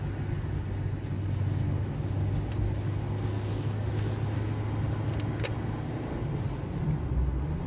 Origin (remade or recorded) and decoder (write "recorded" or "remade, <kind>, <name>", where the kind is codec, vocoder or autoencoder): recorded